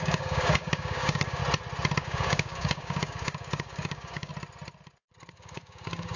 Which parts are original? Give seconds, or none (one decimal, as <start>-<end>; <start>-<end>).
1.4-2.0; 4.3-5.3